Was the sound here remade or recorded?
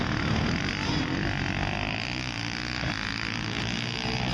recorded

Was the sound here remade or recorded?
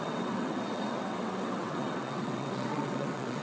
remade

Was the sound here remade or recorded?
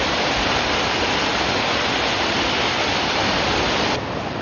recorded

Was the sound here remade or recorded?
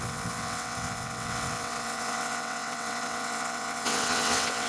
remade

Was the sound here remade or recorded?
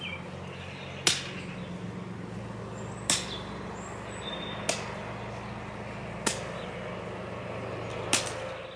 recorded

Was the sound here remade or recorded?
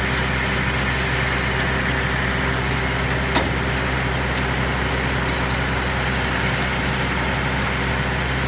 recorded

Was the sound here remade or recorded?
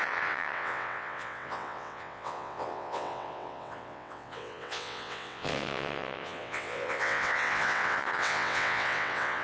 remade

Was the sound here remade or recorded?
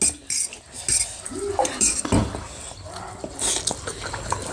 recorded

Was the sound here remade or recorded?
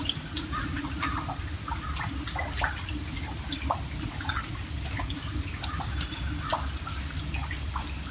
recorded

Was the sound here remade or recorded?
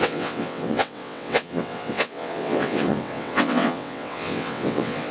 remade